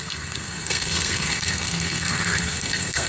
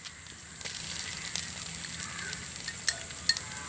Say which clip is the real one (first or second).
second